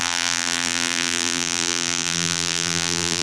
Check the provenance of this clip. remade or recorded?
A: remade